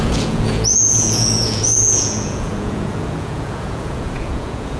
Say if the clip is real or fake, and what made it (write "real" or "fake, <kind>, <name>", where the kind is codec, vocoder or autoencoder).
fake, vocoder, Vocos